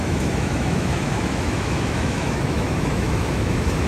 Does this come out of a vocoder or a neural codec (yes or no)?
yes